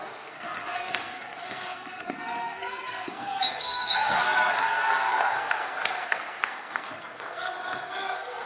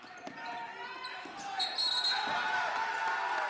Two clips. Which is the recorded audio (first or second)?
second